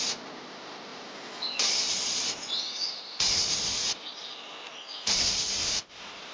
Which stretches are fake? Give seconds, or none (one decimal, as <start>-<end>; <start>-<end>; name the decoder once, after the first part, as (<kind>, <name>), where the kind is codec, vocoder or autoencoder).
0.0-6.3 (vocoder, BigVGAN v2)